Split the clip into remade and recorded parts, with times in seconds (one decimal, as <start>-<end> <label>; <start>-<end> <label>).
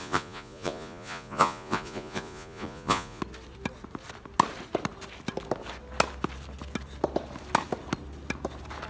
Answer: 0.0-3.2 remade; 3.2-8.9 recorded